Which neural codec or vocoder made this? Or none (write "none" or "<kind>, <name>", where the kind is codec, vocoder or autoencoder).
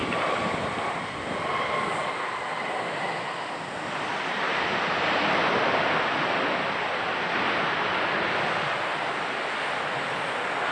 none